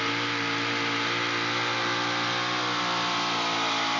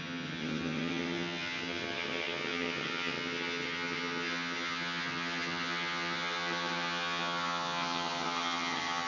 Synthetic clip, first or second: second